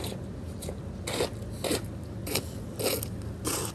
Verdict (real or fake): real